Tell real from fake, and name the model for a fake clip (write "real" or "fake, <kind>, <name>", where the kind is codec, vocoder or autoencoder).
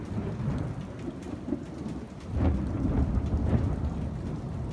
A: real